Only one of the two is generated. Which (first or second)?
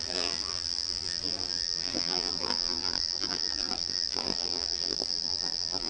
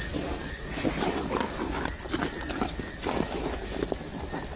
first